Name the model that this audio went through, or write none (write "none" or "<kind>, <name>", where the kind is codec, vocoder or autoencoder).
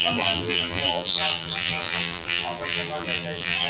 vocoder, BigVGAN v2